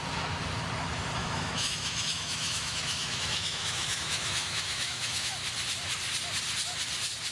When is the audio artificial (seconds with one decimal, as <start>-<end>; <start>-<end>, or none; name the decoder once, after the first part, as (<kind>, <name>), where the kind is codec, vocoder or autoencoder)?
1.2-5.3 (autoencoder, DAC-VAE)